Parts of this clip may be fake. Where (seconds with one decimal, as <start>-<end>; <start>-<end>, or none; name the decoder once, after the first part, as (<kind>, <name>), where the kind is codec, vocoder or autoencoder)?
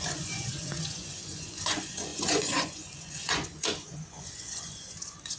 0.0-5.4 (vocoder, Vocos)